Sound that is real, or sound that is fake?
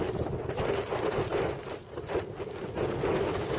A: real